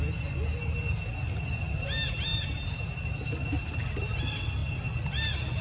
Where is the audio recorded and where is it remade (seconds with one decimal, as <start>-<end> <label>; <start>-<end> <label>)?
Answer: 0.0-5.6 recorded